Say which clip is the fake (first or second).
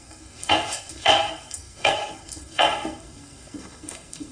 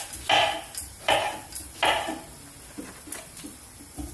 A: first